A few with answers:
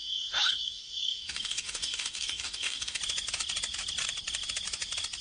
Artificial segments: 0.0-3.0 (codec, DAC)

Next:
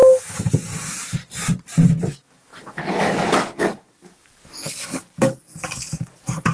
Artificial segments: 2.1-6.5 (codec, DAC)

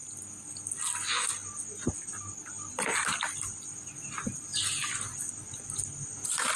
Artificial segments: none

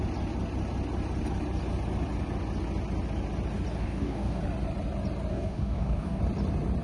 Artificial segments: 3.8-4.4 (codec, DAC); 5.3-6.2

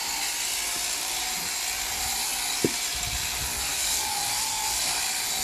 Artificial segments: 3.7-4.2 (codec, DAC)

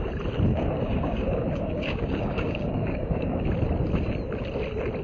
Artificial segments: 0.5-3.5 (codec, DAC)

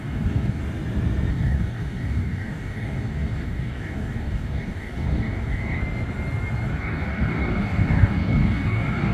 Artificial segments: 0.0-0.6 (codec, DAC); 1.3-5.8; 6.8-9.1